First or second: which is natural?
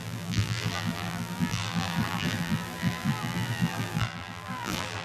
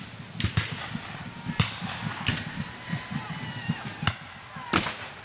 second